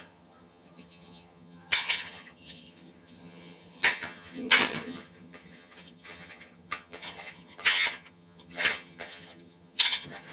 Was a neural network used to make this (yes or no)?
yes